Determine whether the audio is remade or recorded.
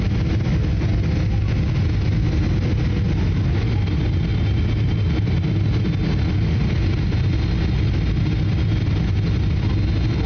recorded